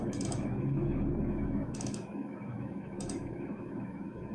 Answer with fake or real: fake